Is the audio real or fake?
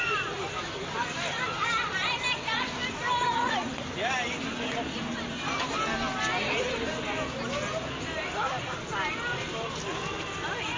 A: real